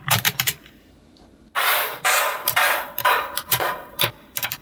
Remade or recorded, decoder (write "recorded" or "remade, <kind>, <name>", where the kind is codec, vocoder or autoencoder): remade, vocoder, BigVGAN v2